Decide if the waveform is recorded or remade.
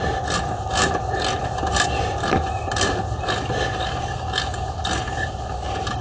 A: recorded